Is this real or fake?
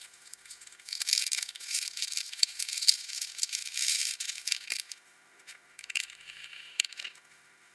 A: fake